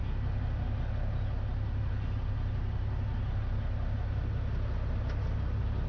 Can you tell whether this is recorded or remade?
recorded